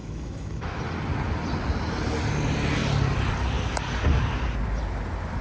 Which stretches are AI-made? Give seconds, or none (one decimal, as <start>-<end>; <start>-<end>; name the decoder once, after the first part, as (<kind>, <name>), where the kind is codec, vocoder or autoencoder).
0.0-0.8 (autoencoder, DAC-VAE)